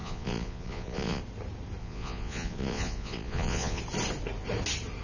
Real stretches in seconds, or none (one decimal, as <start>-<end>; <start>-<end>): 1.2-1.8; 3.8-5.0